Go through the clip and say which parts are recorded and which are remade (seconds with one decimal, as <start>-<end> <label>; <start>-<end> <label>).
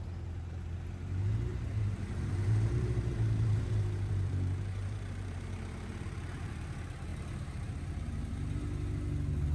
0.0-1.5 recorded; 1.5-6.5 remade; 6.5-7.1 recorded; 7.1-8.6 remade; 8.6-9.5 recorded